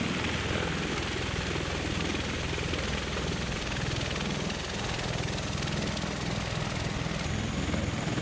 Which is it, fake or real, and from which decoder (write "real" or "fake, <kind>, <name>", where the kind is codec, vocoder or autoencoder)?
real